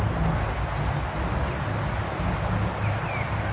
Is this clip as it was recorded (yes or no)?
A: yes